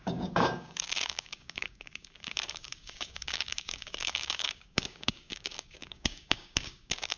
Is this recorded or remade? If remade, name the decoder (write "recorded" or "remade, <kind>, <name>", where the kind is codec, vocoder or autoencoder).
remade, codec, DAC